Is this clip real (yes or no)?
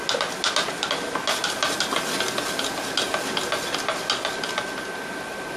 yes